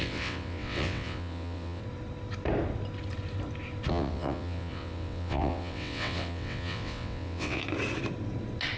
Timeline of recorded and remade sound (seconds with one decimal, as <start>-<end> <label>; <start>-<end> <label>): 0.0-1.8 remade; 1.8-3.9 recorded; 3.9-7.6 remade; 7.6-8.8 recorded